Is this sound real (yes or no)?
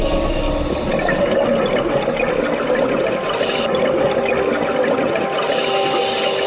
yes